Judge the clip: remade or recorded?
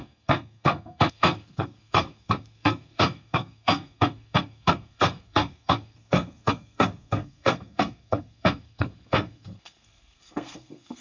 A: remade